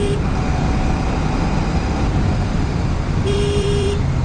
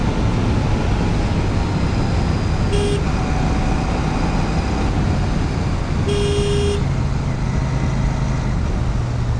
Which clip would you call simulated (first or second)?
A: first